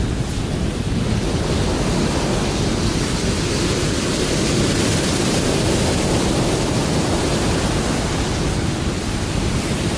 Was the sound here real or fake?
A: real